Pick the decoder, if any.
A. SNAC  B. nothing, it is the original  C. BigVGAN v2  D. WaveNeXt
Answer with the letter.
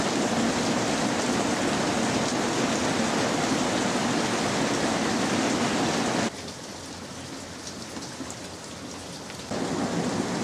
B